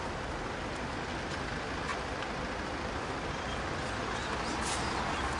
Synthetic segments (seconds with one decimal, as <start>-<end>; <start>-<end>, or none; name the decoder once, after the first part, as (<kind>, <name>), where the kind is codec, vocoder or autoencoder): none